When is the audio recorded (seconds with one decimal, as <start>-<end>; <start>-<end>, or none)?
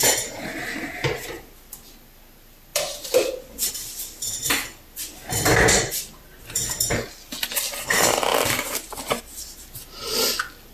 0.0-8.3; 9.2-10.7